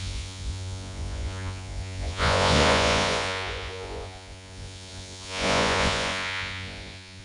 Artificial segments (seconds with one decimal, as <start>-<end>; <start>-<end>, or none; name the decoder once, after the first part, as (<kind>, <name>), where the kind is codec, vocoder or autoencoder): 0.0-7.2 (vocoder, Vocos)

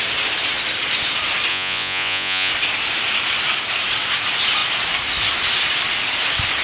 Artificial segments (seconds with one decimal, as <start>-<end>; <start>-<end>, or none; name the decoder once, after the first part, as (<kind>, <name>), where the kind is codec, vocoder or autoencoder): 1.5-2.5 (vocoder, Vocos)

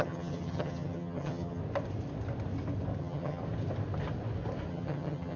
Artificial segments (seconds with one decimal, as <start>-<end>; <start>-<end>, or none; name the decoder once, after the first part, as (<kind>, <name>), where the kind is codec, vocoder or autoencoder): 0.0-1.6 (vocoder, HiFi-GAN); 3.0-3.4; 4.7-5.4

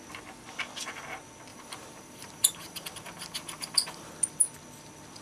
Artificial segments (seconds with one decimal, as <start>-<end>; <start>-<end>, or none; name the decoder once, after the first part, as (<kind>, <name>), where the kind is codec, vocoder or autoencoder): 1.5-4.1 (vocoder, BigVGAN v2)

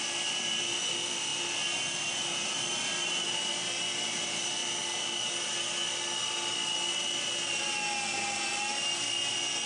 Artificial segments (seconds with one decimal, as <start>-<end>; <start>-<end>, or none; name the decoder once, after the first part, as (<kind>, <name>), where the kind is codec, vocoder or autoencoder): 0.0-4.6 (vocoder, BigVGAN v2)

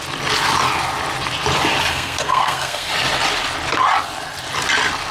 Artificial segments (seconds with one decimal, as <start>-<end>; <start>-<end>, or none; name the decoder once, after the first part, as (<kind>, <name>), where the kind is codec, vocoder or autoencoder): 1.9-2.9 (codec, SNAC)